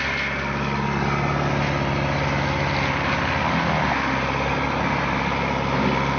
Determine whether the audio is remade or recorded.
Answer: recorded